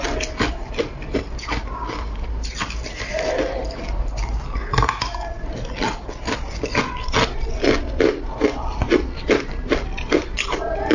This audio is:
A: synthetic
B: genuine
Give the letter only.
B